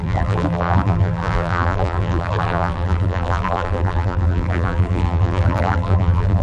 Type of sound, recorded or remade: remade